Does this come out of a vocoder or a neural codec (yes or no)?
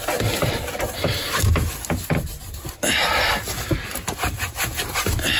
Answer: no